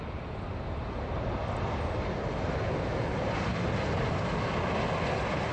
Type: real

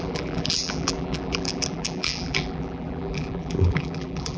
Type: fake